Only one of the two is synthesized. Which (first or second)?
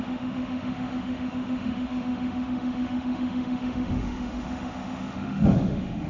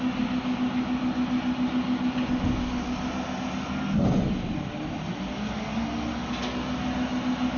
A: first